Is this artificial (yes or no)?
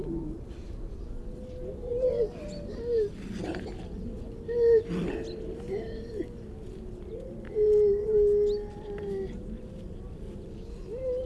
no